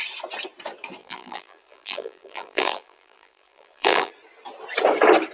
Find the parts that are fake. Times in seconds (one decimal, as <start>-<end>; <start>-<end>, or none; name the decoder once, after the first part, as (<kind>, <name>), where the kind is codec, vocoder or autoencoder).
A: 1.0-4.1 (vocoder, BigVGAN v2)